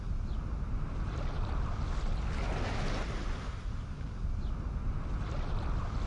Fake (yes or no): no